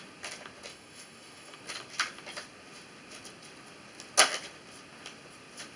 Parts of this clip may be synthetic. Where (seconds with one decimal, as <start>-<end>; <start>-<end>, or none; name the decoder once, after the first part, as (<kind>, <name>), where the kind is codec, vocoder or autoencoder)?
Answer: 0.7-1.6 (autoencoder, DAC-VAE)